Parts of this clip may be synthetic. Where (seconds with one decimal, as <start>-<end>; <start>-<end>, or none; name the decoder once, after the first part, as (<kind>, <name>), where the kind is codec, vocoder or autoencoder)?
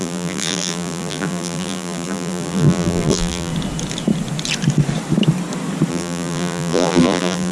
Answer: 0.0-3.5 (vocoder, BigVGAN v2); 5.9-7.5